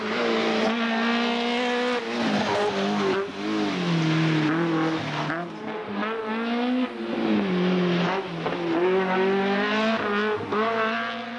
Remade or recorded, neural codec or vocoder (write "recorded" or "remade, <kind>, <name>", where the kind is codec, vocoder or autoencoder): recorded